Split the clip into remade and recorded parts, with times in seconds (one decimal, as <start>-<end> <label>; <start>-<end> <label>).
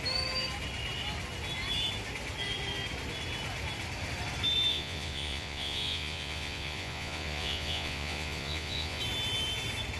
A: 0.0-4.7 recorded; 4.7-9.0 remade; 9.0-10.0 recorded